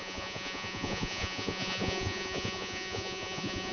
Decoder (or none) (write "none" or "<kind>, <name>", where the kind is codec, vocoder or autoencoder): vocoder, Vocos